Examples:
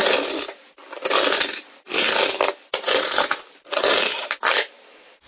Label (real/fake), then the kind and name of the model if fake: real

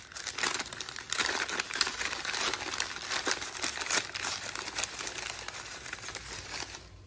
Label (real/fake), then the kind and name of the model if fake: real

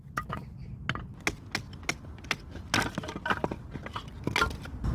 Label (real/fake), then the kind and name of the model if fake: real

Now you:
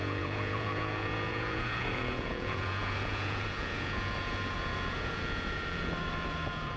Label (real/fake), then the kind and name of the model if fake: fake, vocoder, Vocos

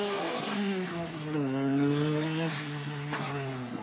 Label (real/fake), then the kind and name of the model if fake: fake, codec, SNAC